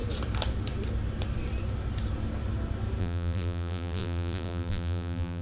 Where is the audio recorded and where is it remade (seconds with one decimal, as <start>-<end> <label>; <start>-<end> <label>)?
0.0-3.0 recorded; 3.0-5.4 remade